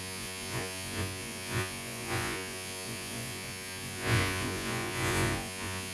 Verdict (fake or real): fake